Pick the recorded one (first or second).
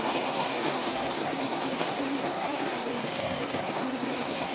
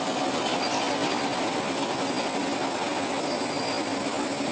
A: second